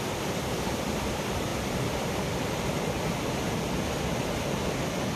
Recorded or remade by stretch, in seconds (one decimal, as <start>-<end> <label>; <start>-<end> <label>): 0.0-1.5 remade; 1.5-4.6 recorded; 4.6-5.2 remade